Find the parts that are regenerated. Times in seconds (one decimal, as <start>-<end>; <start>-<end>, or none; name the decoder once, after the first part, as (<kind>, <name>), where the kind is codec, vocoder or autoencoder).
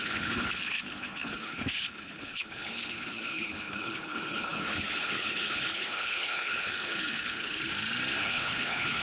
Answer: 0.0-7.7 (codec, HILCodec); 8.2-9.0